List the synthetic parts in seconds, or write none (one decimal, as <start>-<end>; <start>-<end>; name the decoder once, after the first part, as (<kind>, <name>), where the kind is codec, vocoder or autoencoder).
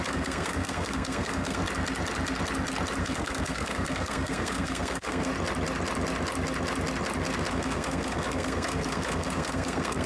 0.0-1.6 (codec, SNAC); 3.0-5.3; 7.5-10.1